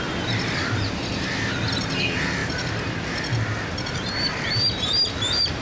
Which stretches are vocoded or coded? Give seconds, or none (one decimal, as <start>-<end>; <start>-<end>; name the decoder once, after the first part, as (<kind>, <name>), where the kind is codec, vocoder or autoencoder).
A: 0.0-5.6 (vocoder, BigVGAN v2)